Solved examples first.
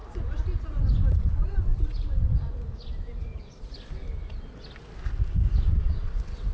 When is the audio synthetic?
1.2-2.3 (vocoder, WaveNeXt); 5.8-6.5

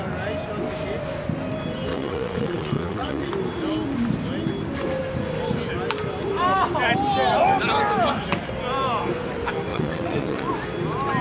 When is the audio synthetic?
1.9-3.3 (vocoder, WaveNeXt); 9.7-10.5

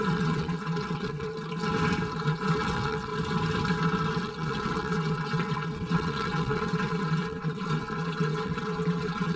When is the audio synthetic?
0.0-1.3 (vocoder, WaveNeXt); 2.2-3.1; 4.2-9.4

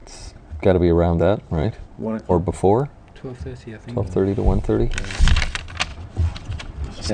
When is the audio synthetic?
0.0-2.3 (vocoder, WaveNeXt); 5.9-7.1

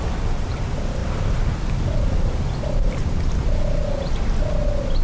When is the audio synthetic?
none

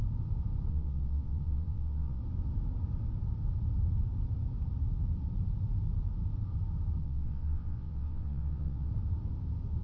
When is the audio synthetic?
0.7-2.2 (vocoder, WaveNeXt); 7.0-8.9

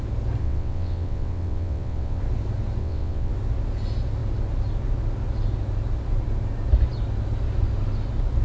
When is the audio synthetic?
0.4-2.2 (vocoder, WaveNeXt); 2.8-3.3